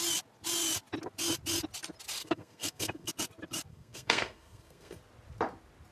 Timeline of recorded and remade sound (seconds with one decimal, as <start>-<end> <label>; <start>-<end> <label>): 0.0-2.2 recorded; 2.2-3.1 remade; 3.1-3.7 recorded; 3.7-5.0 remade; 5.0-5.9 recorded